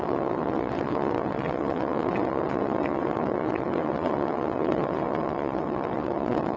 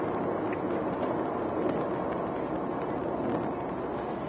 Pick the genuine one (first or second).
second